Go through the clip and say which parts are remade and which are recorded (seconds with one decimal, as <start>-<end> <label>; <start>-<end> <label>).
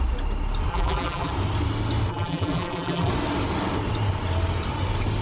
0.0-0.7 recorded; 0.7-1.3 remade; 1.3-2.1 recorded; 2.1-3.1 remade; 3.1-5.2 recorded